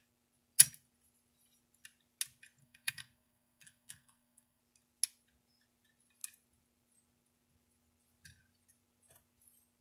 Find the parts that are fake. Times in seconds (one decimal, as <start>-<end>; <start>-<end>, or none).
2.6-4.6